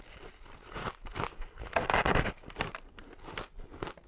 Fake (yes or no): no